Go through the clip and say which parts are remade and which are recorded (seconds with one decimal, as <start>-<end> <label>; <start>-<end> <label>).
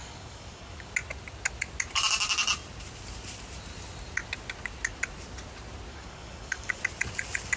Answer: 0.0-0.9 remade; 0.9-5.9 recorded; 5.9-6.8 remade; 6.8-7.6 recorded